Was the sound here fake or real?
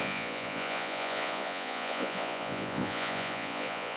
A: fake